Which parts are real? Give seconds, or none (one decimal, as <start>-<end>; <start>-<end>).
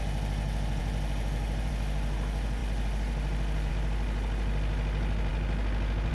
0.0-6.1